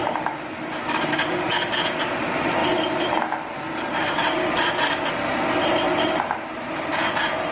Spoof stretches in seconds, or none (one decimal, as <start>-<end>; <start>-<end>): none